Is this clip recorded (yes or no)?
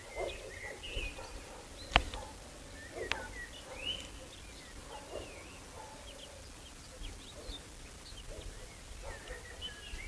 yes